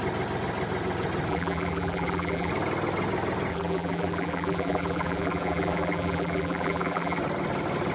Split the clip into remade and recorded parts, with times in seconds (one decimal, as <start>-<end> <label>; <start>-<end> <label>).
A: 0.0-1.3 recorded; 1.3-2.5 remade; 2.5-3.5 recorded; 3.5-7.2 remade; 7.2-7.9 recorded